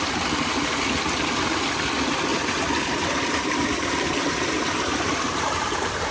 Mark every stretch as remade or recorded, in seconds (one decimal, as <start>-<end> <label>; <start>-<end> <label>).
0.0-2.3 recorded; 2.3-6.1 remade